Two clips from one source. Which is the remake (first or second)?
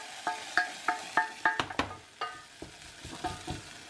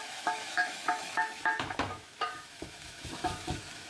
second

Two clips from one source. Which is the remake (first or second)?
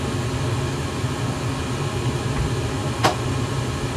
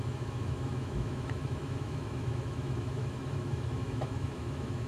second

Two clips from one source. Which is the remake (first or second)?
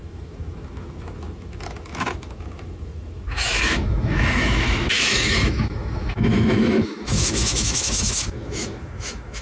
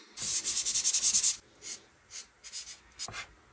first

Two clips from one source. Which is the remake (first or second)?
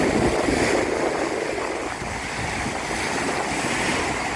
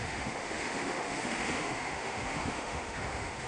second